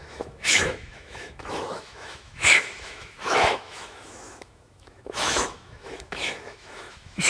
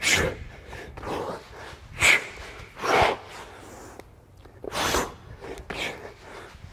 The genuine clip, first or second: second